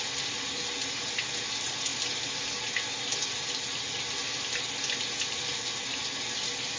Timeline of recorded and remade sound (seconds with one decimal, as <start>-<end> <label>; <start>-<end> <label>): 0.0-6.8 recorded